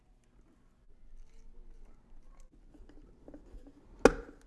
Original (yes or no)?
yes